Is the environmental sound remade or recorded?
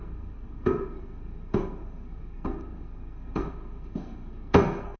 remade